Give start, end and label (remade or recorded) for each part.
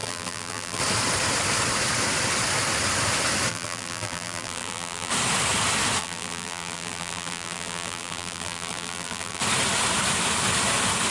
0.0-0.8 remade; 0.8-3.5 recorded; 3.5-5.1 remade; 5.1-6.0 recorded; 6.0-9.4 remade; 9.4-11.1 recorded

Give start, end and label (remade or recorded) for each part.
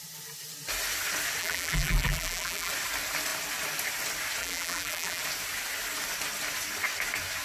0.0-1.4 recorded; 1.4-2.7 remade; 2.7-4.4 recorded; 4.4-5.2 remade; 5.2-7.4 recorded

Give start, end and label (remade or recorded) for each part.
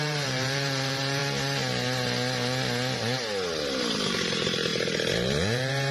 0.0-1.2 remade; 1.2-3.9 recorded; 3.9-5.9 remade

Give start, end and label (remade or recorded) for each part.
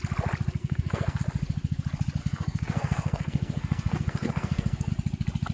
0.0-0.6 recorded; 0.6-1.2 remade; 1.2-2.2 recorded; 2.2-4.9 remade; 4.9-5.5 recorded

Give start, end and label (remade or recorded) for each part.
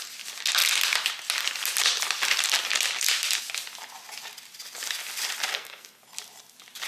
0.0-5.5 recorded; 5.5-6.0 remade; 6.0-6.9 recorded